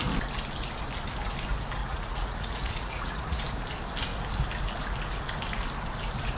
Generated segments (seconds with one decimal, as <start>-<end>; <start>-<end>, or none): 1.8-3.4